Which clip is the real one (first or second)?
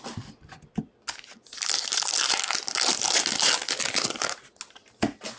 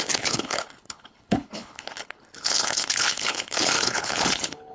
first